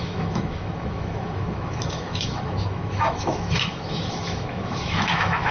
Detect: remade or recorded remade